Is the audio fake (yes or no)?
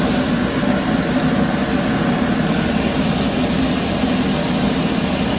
no